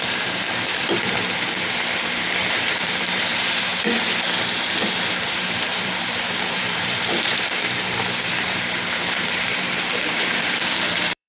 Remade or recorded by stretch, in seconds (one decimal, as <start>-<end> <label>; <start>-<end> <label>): 0.0-11.3 remade